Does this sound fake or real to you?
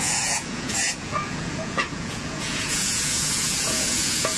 fake